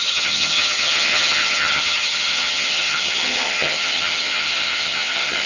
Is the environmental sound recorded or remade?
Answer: remade